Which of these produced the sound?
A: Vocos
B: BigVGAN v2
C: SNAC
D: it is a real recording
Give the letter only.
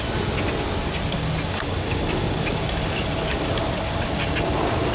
D